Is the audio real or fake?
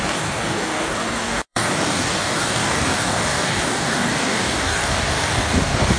fake